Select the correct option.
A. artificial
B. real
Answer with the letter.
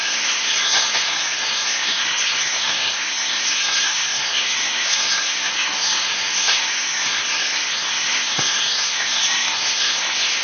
A